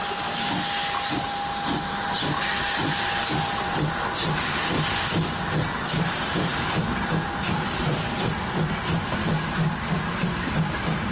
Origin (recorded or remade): recorded